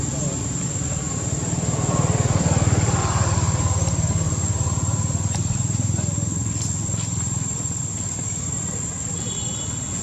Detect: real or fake fake